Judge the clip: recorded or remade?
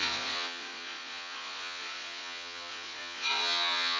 remade